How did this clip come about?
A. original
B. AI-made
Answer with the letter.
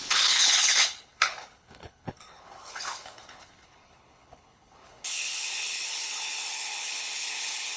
B